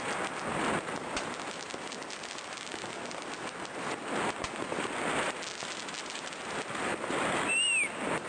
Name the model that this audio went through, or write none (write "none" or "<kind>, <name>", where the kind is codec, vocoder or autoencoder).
none